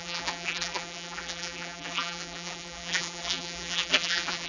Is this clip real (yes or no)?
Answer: no